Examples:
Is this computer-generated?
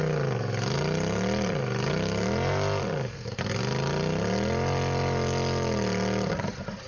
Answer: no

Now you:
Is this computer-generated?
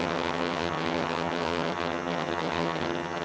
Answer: yes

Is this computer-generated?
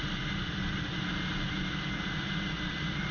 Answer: no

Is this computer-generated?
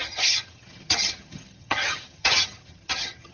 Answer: yes